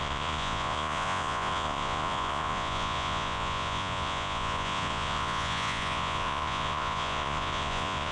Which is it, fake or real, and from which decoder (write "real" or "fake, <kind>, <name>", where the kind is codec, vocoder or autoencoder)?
fake, vocoder, Vocos